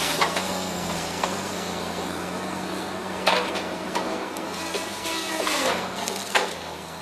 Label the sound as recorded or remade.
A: remade